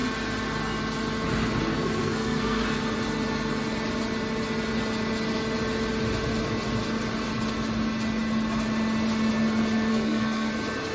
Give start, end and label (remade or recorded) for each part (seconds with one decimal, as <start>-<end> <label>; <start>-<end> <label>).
0.0-1.7 recorded; 1.7-2.6 remade; 2.6-9.9 recorded; 9.9-10.5 remade; 10.5-10.9 recorded